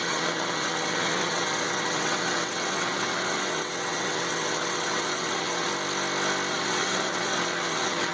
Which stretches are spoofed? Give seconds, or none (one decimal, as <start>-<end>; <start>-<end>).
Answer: 0.0-5.7; 6.5-8.1